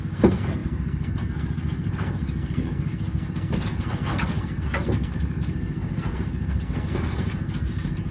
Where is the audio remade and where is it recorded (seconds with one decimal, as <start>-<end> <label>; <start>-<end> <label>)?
0.0-8.1 remade